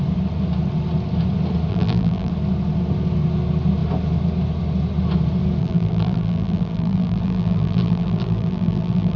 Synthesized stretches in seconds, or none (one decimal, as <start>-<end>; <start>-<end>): 1.7-2.3; 5.6-9.2